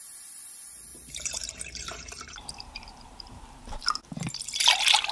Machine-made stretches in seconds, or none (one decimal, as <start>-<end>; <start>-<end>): 0.9-4.0

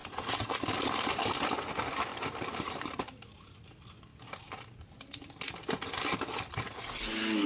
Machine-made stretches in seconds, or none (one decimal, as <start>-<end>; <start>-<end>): 2.1-3.4

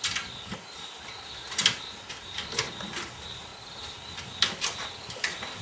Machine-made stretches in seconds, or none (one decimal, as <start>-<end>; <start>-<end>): 0.0-1.4; 2.1-3.5; 5.0-5.6